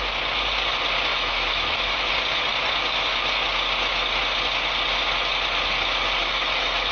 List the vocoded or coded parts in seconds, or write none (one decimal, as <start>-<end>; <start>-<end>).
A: 1.1-2.1; 6.2-6.9